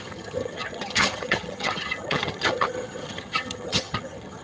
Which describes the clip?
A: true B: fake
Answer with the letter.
B